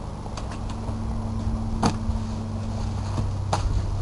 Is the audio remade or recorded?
recorded